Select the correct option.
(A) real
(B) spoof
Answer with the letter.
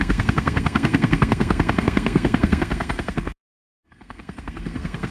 B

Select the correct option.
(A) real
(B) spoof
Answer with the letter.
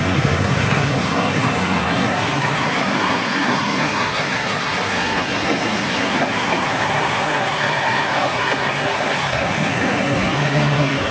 B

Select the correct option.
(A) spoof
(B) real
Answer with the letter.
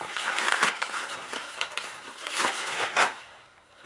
A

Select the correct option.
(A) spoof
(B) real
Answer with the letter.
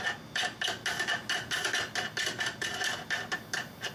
B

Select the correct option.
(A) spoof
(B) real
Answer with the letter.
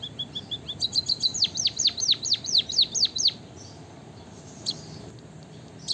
B